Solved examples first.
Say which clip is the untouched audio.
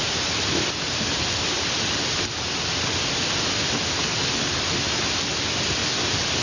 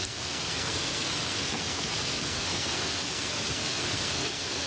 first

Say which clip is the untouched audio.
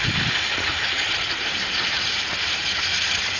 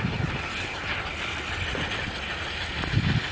second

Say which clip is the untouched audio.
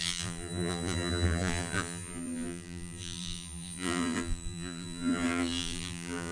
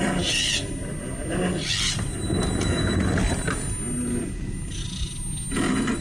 second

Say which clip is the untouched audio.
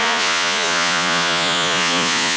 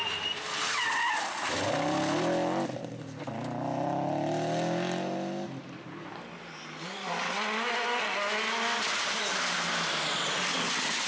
second